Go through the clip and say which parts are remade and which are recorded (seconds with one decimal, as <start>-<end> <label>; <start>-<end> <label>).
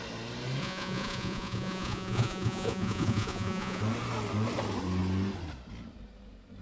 0.0-0.6 recorded; 0.6-3.8 remade; 3.8-6.6 recorded